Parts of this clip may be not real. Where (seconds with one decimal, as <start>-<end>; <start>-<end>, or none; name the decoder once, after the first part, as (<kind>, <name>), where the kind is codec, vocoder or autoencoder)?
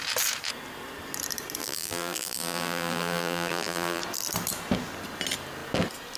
1.6-4.0 (vocoder, BigVGAN v2)